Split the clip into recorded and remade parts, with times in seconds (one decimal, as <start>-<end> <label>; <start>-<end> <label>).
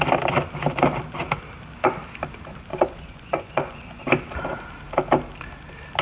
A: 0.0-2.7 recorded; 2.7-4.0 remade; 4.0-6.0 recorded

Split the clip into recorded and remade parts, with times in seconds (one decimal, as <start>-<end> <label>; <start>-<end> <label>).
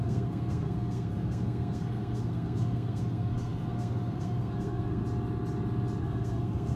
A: 0.0-5.0 remade; 5.0-6.0 recorded; 6.0-6.8 remade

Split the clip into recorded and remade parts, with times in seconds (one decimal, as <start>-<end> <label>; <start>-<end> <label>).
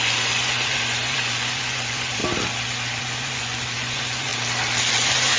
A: 0.0-2.2 remade; 2.2-3.0 recorded; 3.0-4.3 remade; 4.3-4.9 recorded; 4.9-5.4 remade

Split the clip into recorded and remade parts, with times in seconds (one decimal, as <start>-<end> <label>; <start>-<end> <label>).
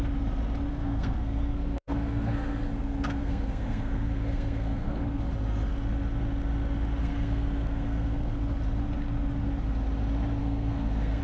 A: 0.0-0.7 recorded; 0.7-5.2 remade; 5.2-7.0 recorded; 7.0-8.4 remade; 8.4-10.4 recorded; 10.4-11.2 remade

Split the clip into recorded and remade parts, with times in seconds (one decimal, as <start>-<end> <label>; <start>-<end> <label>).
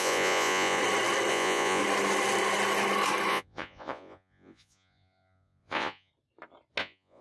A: 0.0-0.8 remade; 0.8-1.3 recorded; 1.3-1.8 remade; 1.8-3.3 recorded; 3.3-6.1 remade; 6.1-6.8 recorded; 6.8-7.2 remade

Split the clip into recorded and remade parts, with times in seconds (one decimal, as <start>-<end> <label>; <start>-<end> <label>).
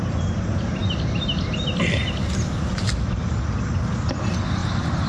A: 0.0-5.1 recorded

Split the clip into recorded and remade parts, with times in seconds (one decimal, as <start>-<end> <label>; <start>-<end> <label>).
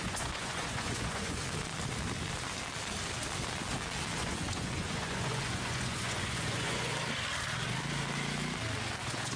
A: 0.0-1.4 remade; 1.4-4.2 recorded; 4.2-6.9 remade; 6.9-9.0 recorded; 9.0-9.4 remade